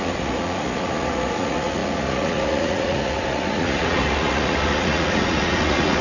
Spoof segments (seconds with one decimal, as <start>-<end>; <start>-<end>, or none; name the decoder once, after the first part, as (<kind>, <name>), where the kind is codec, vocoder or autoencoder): 0.0-6.0 (vocoder, Vocos)